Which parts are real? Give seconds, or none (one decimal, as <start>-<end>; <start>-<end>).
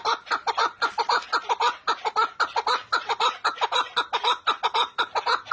0.0-5.5